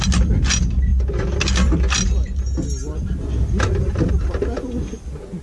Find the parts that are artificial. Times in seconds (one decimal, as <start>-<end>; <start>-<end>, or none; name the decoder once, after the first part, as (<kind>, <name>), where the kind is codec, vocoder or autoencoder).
none

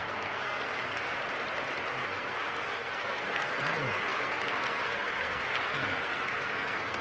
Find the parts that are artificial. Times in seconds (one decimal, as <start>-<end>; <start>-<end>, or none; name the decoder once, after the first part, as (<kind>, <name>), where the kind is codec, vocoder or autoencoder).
0.0-1.2 (codec, SNAC); 1.9-7.0

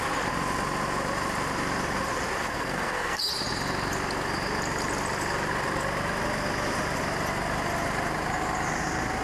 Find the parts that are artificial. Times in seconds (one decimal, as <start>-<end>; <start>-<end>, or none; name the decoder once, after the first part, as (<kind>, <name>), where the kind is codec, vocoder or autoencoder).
2.4-3.2 (codec, SNAC)